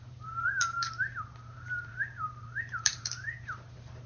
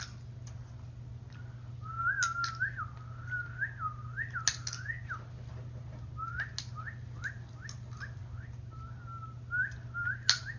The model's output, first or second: first